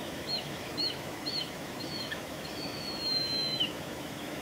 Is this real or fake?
fake